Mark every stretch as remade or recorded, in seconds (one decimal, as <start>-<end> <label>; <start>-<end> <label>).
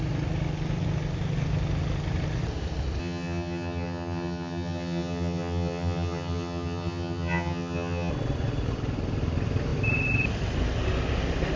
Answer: 0.0-3.0 recorded; 3.0-8.1 remade; 8.1-11.6 recorded